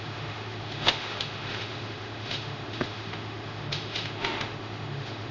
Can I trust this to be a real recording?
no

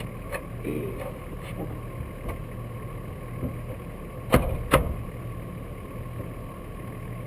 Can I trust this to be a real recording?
yes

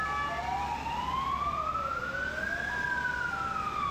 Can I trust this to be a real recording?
yes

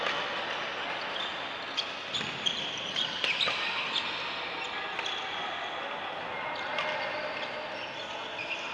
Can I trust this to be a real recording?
yes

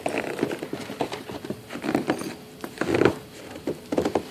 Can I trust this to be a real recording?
yes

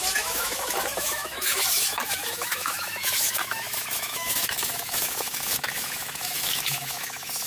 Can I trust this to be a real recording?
no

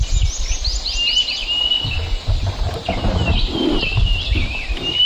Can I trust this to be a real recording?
yes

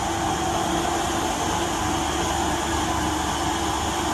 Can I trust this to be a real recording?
yes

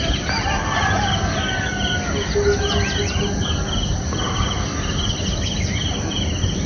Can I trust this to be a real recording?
yes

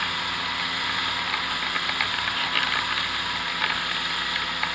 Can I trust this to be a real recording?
yes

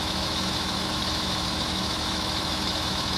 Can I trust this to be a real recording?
no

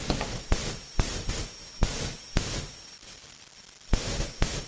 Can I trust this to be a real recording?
yes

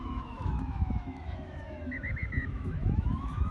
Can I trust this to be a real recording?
no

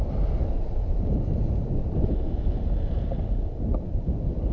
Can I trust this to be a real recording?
yes